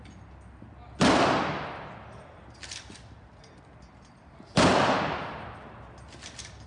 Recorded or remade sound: recorded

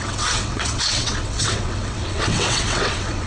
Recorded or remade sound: remade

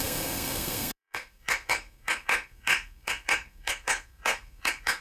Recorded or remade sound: remade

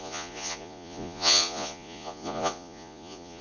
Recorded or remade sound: remade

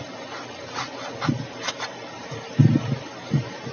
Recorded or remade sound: recorded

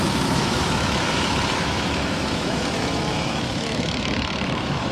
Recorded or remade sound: remade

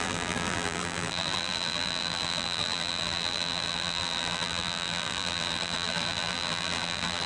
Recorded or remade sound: remade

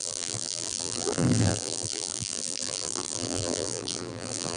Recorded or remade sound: remade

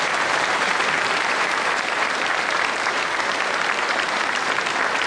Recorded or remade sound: remade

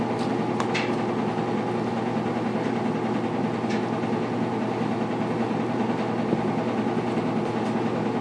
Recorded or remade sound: recorded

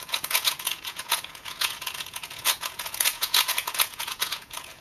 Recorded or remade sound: remade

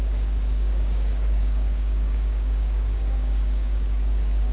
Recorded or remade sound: remade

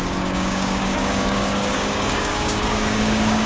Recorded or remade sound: remade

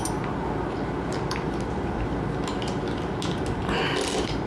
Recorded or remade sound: recorded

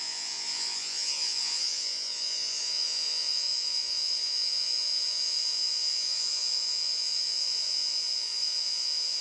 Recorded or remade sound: remade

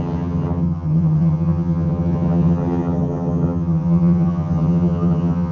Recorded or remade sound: remade